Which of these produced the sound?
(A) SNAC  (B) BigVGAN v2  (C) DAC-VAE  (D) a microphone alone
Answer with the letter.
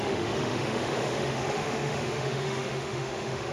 C